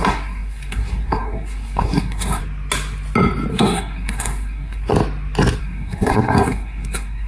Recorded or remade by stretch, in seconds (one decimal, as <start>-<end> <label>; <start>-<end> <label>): 0.0-2.4 remade; 2.4-3.5 recorded; 3.5-4.9 remade; 4.9-5.6 recorded; 5.6-7.3 remade